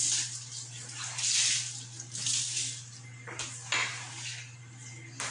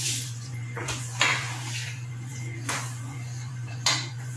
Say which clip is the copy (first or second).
second